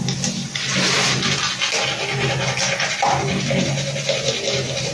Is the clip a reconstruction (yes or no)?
no